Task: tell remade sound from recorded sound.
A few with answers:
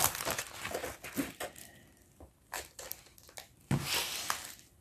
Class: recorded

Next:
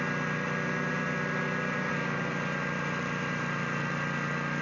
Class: recorded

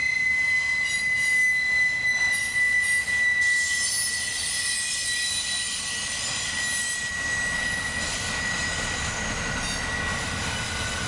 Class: recorded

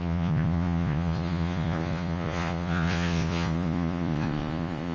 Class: remade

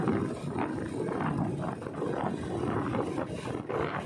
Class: recorded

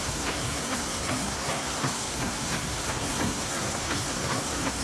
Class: remade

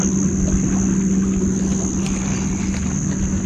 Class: recorded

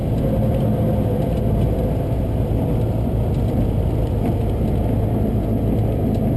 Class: recorded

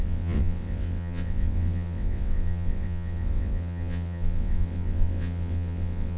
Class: remade